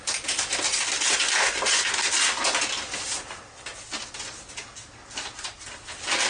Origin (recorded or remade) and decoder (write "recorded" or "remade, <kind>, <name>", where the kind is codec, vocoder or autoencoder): recorded